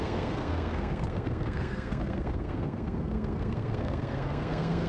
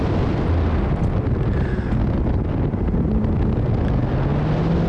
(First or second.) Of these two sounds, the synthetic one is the first